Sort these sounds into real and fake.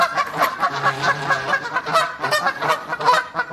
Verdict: real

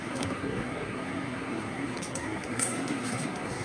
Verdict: fake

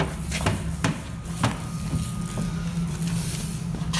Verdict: real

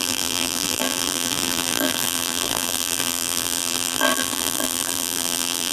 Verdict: fake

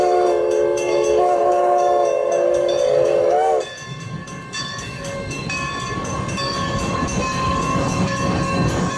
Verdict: fake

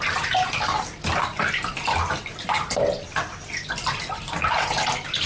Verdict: real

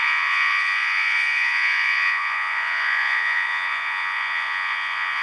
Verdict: fake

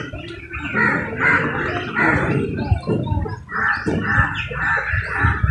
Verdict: real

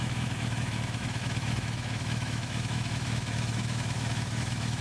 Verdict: fake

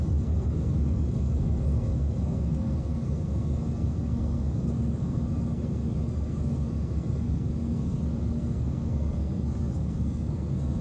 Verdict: fake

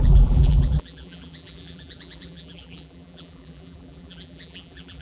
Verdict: fake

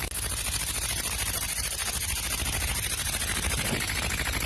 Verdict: real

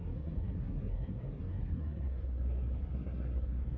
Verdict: fake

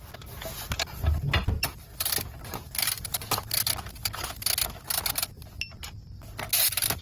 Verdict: real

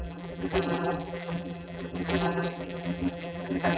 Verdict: fake